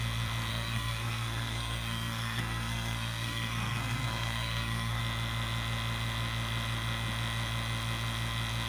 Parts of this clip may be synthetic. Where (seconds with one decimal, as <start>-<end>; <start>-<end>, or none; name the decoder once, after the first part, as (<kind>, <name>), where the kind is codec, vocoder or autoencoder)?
0.5-5.0 (codec, SNAC)